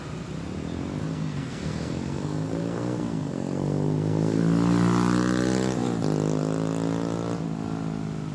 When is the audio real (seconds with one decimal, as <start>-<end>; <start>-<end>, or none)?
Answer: 0.0-1.0; 4.4-8.3